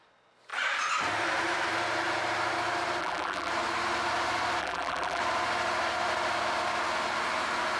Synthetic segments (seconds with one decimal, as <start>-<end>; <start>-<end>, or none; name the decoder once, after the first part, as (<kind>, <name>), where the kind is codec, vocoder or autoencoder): 3.0-3.5 (vocoder, BigVGAN v2); 4.6-5.2